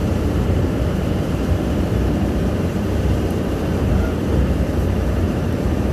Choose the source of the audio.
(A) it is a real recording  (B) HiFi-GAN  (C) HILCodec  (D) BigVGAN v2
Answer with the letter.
D